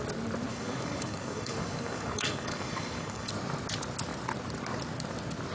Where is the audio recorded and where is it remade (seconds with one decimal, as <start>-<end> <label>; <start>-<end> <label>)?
0.0-0.5 recorded; 0.5-3.3 remade; 3.3-5.5 recorded

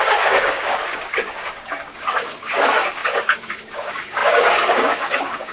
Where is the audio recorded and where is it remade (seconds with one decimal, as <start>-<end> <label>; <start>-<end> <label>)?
0.0-5.5 remade

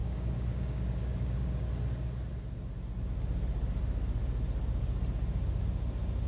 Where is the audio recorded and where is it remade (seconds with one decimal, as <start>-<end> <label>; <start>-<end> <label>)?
0.0-1.7 remade; 1.7-6.3 recorded

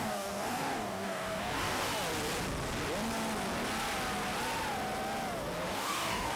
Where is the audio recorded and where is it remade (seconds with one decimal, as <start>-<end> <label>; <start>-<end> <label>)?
0.0-1.9 remade; 1.9-5.7 recorded; 5.7-6.4 remade

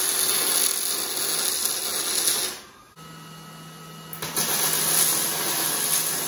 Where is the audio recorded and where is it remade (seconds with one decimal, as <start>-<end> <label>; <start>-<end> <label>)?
0.0-6.3 recorded

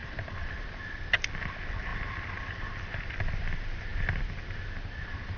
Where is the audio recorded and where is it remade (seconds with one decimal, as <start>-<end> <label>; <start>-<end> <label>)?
0.0-5.4 recorded

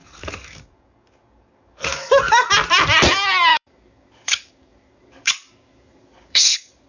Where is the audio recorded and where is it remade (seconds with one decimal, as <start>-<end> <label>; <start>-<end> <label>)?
0.0-2.5 remade; 2.5-3.5 recorded; 3.5-6.9 remade

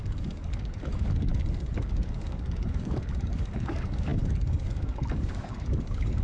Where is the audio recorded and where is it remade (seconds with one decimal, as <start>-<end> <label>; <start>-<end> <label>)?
0.0-1.3 remade; 1.3-1.9 recorded; 1.9-6.2 remade